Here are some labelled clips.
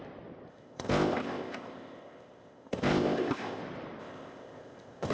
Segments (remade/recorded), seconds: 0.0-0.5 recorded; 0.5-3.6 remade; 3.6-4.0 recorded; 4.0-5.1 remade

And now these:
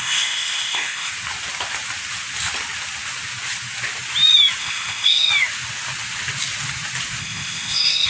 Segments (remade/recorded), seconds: 0.0-1.1 remade; 1.1-4.6 recorded; 4.6-5.3 remade; 5.3-7.2 recorded; 7.2-8.1 remade

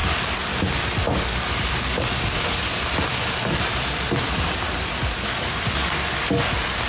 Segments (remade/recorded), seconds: 0.0-6.9 recorded

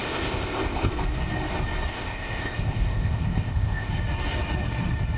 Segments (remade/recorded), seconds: 0.0-0.9 remade; 0.9-1.9 recorded; 1.9-3.9 remade; 3.9-5.2 recorded